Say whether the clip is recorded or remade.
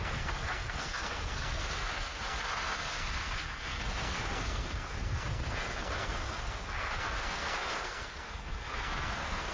remade